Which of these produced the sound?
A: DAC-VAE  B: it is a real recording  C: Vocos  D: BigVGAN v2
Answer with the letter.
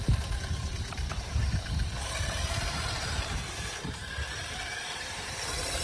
D